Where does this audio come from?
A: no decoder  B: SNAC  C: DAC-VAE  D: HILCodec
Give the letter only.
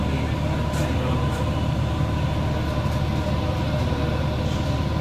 A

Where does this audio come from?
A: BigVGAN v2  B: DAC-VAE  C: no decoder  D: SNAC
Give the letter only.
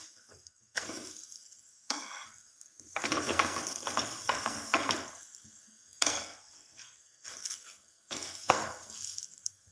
D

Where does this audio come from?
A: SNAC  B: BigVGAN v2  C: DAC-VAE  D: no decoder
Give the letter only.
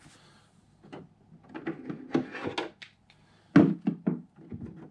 D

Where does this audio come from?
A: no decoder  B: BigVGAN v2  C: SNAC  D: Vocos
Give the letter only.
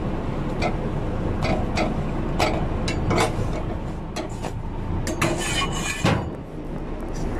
A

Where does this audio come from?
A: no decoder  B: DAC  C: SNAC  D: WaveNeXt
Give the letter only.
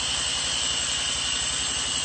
A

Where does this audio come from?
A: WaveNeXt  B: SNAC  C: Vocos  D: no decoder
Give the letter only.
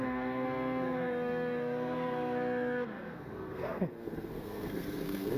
B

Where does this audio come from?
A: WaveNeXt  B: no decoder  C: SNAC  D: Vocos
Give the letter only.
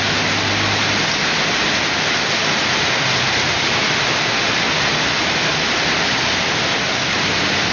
B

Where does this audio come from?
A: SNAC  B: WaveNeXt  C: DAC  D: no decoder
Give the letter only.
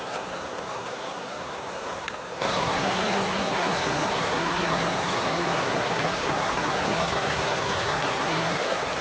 A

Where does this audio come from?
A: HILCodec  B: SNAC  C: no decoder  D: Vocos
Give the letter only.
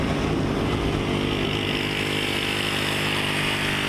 C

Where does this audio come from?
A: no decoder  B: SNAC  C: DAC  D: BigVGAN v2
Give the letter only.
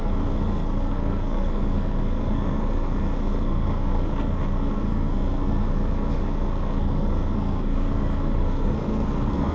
B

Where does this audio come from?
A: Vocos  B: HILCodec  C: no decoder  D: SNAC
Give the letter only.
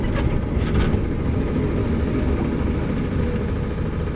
C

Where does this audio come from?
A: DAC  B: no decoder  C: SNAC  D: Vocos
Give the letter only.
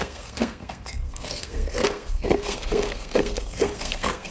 C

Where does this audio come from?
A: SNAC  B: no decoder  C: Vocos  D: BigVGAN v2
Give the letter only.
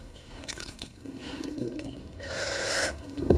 A